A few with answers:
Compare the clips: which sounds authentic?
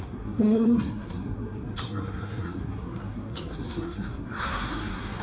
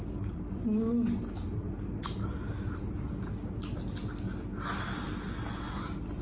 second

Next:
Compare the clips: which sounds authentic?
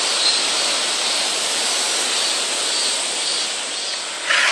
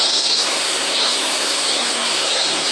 first